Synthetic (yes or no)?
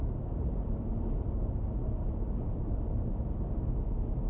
no